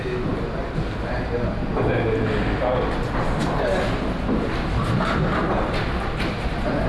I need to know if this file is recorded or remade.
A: recorded